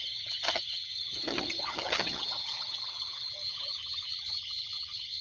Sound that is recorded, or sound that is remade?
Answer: remade